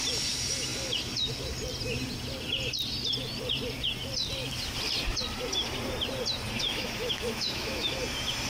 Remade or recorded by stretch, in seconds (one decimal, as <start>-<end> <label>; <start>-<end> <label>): 0.0-6.6 recorded; 6.6-7.9 remade; 7.9-8.5 recorded